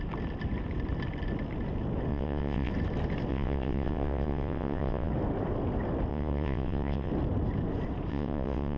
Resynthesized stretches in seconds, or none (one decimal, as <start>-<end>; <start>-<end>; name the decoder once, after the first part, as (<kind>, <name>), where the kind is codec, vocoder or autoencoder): 2.1-2.7 (vocoder, WaveNeXt); 3.3-5.1; 6.1-7.1; 8.1-8.8